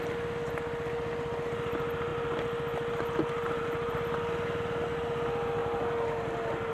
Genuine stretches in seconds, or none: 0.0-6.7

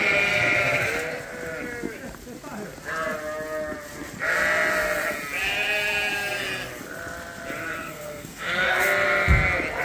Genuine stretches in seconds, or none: 0.0-7.8; 8.8-9.8